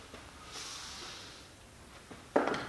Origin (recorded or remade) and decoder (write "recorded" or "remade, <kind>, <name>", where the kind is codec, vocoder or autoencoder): recorded